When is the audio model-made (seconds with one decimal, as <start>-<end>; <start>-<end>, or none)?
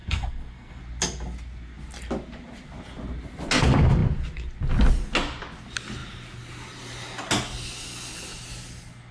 0.0-0.8